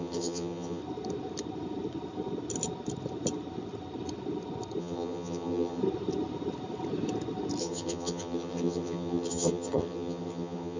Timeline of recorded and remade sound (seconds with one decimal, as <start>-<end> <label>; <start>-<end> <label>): 0.0-0.8 remade; 0.8-4.8 recorded; 4.8-5.8 remade; 5.8-7.6 recorded; 7.6-10.8 remade